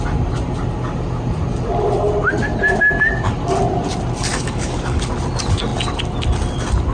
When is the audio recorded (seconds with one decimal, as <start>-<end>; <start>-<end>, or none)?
0.0-4.3; 5.0-6.9